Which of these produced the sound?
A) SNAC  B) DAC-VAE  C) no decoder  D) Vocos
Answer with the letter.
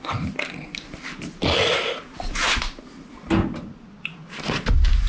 C